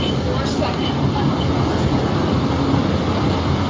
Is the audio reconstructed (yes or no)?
no